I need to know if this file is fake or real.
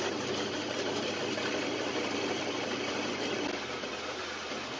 fake